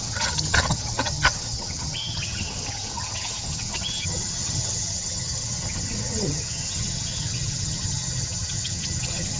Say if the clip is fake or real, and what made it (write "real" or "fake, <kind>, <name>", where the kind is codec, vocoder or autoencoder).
fake, vocoder, HiFi-GAN